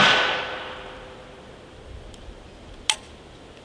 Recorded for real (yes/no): yes